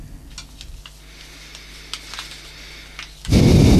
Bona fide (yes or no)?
yes